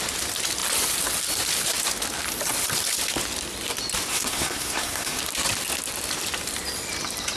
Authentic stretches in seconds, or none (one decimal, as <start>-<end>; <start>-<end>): 0.0-4.1; 5.2-7.4

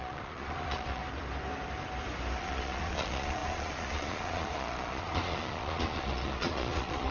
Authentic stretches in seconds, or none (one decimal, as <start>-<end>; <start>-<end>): 1.0-2.4

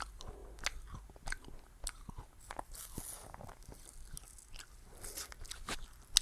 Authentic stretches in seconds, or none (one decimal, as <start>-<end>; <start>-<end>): 0.0-6.2

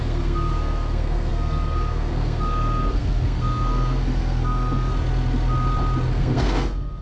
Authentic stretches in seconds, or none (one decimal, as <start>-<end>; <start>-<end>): 4.9-6.1